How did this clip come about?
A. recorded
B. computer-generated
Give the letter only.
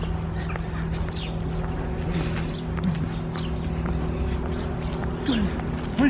A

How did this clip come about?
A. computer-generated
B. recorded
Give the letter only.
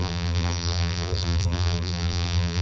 A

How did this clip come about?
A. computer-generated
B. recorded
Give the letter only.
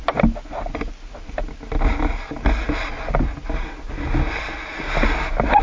B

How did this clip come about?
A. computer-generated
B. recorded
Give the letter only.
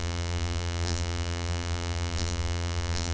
A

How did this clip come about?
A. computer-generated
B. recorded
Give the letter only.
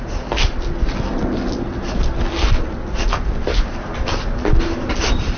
B